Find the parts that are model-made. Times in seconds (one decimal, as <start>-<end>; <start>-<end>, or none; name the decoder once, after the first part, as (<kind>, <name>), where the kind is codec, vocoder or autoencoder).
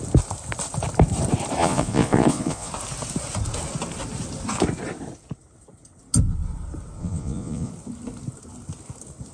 1.6-2.7 (vocoder, Vocos); 7.0-7.7